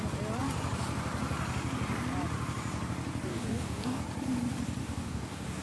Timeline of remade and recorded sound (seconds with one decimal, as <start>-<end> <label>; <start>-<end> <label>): 0.0-3.3 recorded; 3.3-4.0 remade; 4.0-4.8 recorded; 4.8-5.6 remade